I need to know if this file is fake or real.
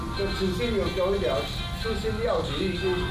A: real